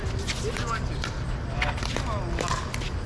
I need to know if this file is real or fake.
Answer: real